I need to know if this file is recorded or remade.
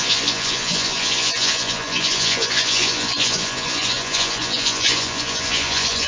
remade